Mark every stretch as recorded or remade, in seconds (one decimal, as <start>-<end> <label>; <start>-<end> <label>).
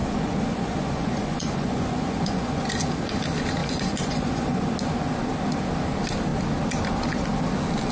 0.0-2.7 remade; 2.7-3.6 recorded; 3.6-4.6 remade; 4.6-7.9 recorded